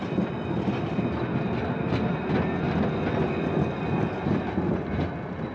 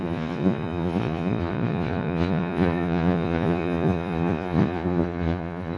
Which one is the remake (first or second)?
second